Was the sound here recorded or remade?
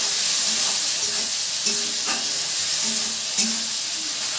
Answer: recorded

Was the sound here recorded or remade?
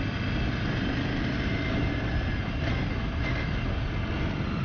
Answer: recorded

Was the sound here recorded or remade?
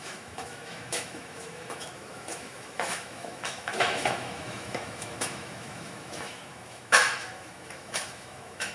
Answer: remade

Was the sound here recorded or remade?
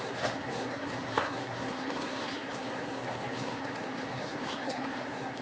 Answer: remade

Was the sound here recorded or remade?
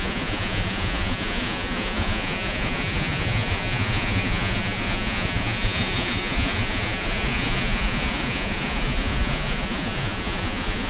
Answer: remade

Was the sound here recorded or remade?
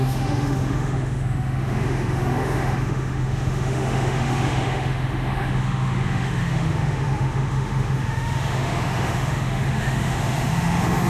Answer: remade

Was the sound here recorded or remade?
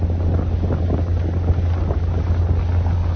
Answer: recorded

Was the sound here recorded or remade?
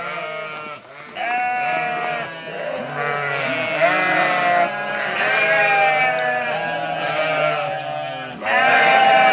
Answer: recorded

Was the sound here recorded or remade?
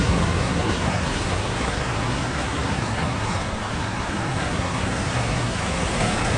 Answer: remade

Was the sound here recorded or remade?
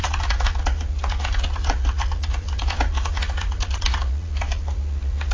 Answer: remade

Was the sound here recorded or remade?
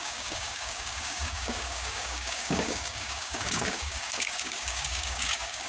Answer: remade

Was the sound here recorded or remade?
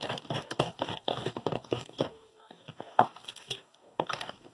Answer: remade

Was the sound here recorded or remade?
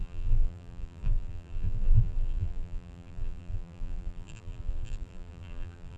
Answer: remade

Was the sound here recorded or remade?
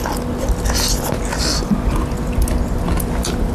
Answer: recorded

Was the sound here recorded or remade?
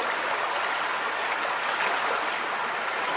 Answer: recorded